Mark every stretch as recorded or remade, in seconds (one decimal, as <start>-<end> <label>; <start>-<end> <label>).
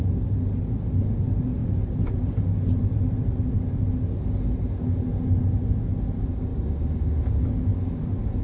0.0-8.4 recorded